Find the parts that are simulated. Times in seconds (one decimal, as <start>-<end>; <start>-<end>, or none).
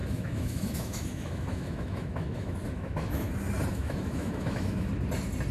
0.0-3.3; 3.7-4.9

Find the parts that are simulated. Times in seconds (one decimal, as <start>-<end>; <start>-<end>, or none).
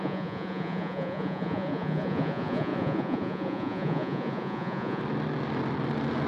0.0-5.0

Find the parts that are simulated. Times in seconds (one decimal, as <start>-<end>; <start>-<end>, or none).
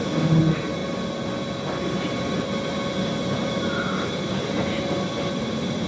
none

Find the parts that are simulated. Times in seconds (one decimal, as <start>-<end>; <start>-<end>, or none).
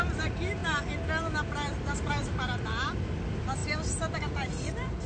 none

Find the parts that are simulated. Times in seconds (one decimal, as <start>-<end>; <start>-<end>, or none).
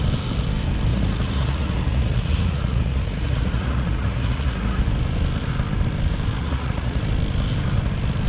0.9-4.8; 6.4-7.0